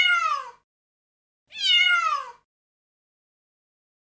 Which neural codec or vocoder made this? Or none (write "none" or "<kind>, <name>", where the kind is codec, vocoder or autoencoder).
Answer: none